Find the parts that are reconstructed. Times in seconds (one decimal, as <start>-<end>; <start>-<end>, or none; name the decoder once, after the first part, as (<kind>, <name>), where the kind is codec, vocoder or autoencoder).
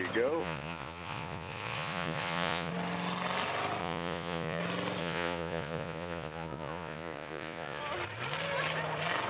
0.4-2.7 (vocoder, Vocos); 3.8-4.6; 5.0-7.8